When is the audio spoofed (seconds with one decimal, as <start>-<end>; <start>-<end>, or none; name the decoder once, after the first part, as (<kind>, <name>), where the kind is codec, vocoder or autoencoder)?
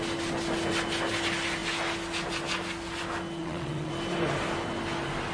3.4-3.9 (vocoder, WaveNeXt)